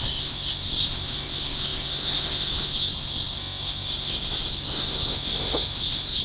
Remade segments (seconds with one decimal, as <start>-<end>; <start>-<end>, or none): 0.0-6.2